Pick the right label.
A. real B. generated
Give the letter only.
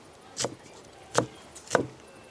A